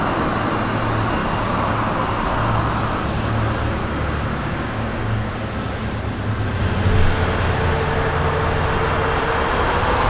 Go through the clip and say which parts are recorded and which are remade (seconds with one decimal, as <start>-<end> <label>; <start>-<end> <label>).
0.0-3.8 recorded; 3.8-5.3 remade; 5.3-10.1 recorded